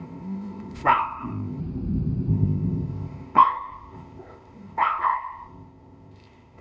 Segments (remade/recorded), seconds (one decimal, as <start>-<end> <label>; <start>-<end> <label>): 0.0-1.6 remade; 1.6-2.3 recorded; 2.3-6.6 remade